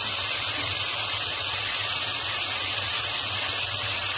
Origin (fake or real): real